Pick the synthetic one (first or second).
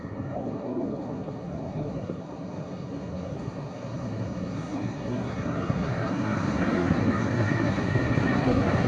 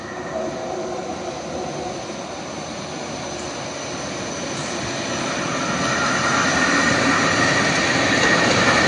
first